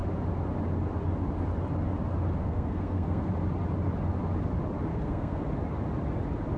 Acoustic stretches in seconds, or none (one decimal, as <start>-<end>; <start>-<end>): 0.0-2.4; 3.3-4.9; 5.4-6.6